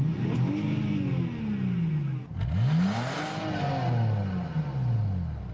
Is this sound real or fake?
real